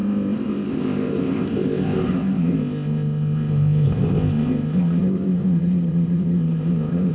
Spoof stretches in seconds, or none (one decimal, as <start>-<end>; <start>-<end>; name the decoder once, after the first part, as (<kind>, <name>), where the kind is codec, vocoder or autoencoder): 0.0-7.1 (codec, ZipCodec)